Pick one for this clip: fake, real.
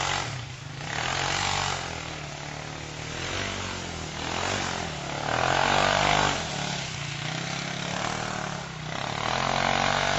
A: real